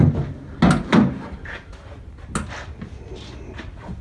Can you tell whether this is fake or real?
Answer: real